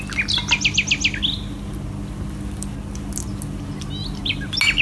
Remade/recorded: recorded